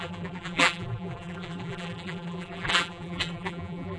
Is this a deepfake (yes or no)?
yes